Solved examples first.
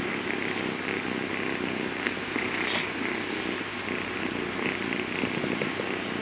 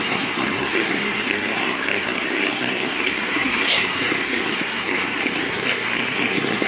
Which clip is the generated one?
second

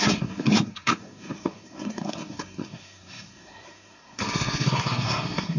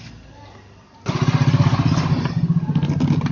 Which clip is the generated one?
first